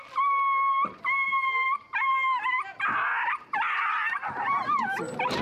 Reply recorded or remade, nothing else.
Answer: recorded